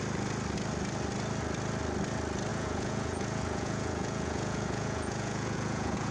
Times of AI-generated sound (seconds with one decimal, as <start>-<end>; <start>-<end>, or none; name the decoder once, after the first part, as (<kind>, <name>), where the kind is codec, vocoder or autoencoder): 2.5-6.1 (vocoder, Vocos)